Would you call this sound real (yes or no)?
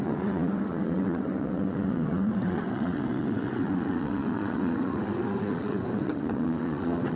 no